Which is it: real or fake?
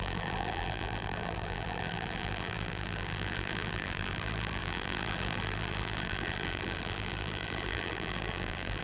fake